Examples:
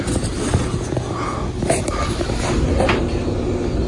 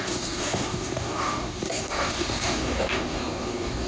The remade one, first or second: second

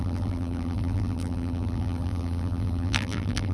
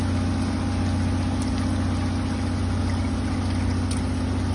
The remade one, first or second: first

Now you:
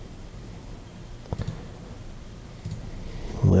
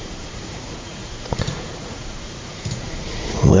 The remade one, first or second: second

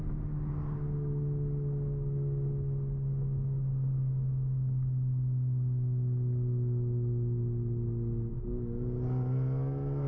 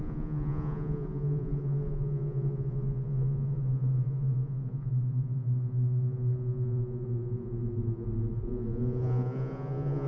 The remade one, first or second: second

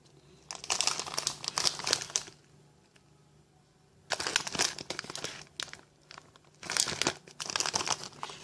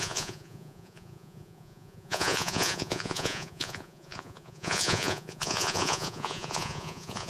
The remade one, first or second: second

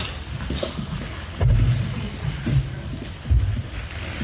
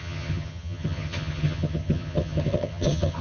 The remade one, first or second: second